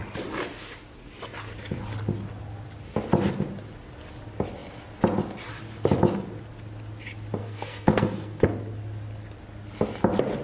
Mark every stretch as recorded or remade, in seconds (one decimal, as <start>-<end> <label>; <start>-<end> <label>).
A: 0.0-7.4 recorded; 7.4-8.5 remade; 8.5-10.4 recorded